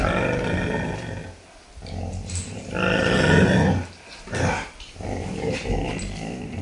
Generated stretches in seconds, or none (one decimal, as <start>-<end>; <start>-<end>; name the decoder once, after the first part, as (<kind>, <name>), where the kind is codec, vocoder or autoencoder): none